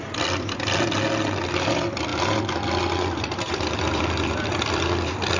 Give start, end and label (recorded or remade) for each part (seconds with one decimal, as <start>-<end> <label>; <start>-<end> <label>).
0.0-5.4 recorded